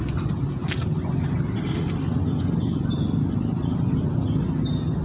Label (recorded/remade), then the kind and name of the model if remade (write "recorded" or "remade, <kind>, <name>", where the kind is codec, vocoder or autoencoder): recorded